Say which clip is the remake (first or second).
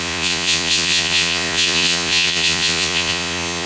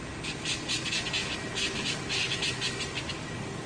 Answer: first